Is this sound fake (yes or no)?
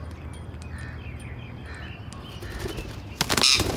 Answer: no